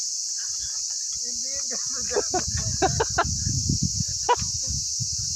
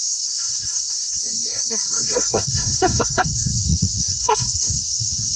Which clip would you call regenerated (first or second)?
second